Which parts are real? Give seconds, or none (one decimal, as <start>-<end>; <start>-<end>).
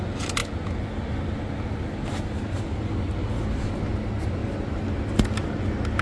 0.0-4.4; 5.0-6.0